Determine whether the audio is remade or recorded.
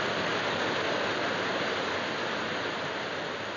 recorded